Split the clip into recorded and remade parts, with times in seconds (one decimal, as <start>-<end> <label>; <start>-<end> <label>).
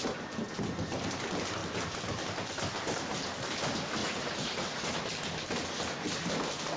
0.0-4.0 recorded; 4.0-5.0 remade; 5.0-6.8 recorded